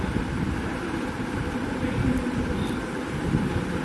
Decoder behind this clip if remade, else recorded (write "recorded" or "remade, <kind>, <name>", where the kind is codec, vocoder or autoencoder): remade, vocoder, BigVGAN v2